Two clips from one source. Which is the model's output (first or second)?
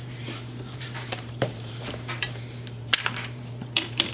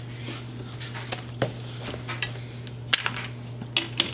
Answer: first